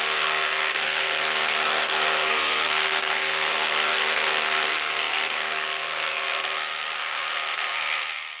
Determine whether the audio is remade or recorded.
remade